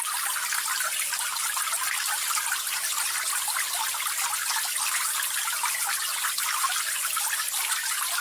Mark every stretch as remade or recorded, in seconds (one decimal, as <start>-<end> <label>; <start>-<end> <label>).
0.0-8.2 recorded